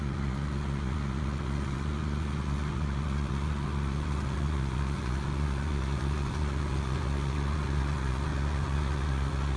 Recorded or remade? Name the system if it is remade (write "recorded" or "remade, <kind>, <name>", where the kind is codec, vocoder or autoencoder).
remade, vocoder, Vocos